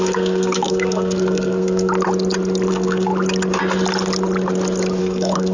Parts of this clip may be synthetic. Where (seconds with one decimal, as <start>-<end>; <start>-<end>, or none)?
0.0-1.9; 2.7-3.1; 5.0-5.5